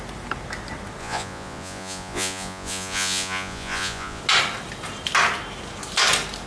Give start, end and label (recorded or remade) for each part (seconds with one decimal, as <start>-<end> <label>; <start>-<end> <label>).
0.0-1.0 recorded; 1.0-4.2 remade; 4.2-6.5 recorded